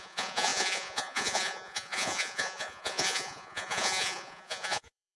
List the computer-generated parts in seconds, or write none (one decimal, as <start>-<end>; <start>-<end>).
0.0-5.2